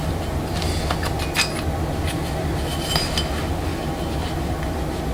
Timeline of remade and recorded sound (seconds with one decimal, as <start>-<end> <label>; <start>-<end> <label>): 0.0-5.1 recorded